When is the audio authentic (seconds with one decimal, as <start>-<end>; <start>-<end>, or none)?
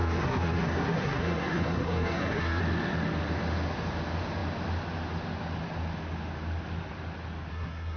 2.6-7.5